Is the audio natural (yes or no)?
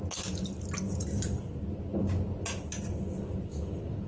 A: yes